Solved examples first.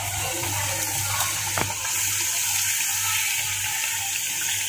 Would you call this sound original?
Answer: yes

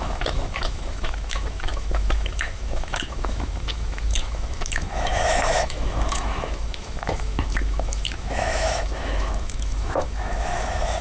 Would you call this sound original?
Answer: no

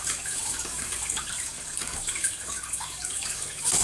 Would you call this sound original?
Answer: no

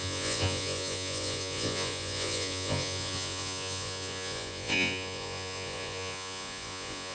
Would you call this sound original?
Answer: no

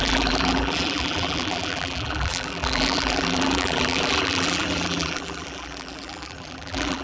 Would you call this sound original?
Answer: no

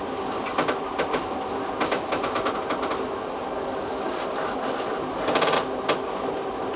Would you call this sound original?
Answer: yes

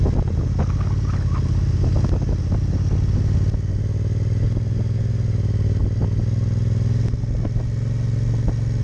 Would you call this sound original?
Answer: yes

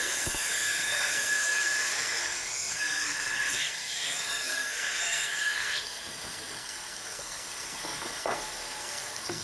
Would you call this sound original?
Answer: no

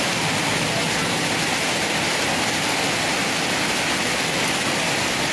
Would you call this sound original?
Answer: yes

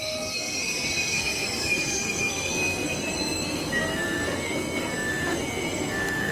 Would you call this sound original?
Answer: no